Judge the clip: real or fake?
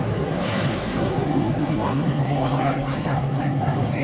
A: fake